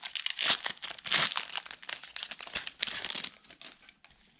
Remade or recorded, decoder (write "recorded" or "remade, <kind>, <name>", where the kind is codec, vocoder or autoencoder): recorded